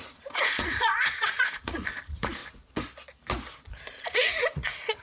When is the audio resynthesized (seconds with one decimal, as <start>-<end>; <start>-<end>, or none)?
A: 0.0-2.4; 4.0-5.0